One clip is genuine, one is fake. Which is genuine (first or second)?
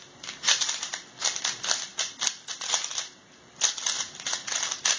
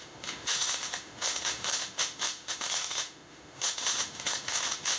first